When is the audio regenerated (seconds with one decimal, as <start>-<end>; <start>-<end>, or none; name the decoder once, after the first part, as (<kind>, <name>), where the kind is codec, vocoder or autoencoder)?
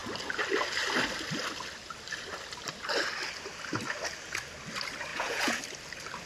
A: 5.1-5.6 (vocoder, Vocos)